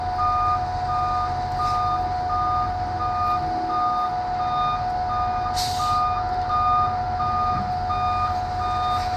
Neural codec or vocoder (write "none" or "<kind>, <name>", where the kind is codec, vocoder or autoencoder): none